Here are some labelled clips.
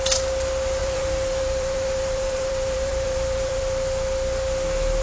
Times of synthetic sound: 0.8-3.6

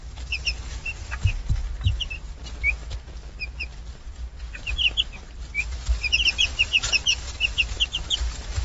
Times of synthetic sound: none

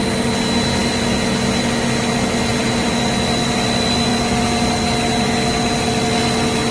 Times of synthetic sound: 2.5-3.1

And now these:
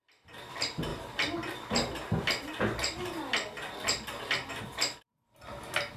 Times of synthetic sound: none

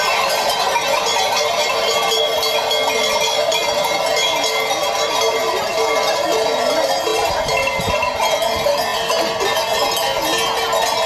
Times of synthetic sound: none